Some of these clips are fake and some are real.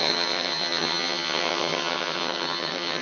fake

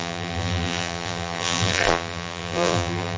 fake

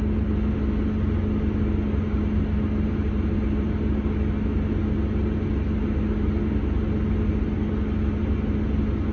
real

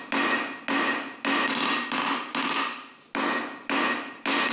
real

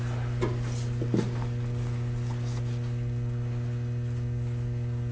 real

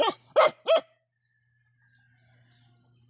real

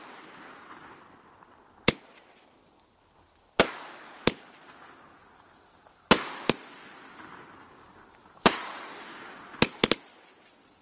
real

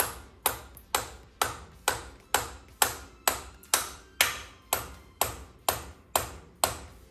real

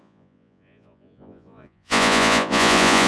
fake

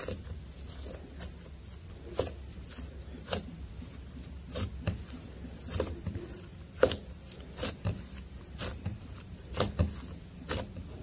real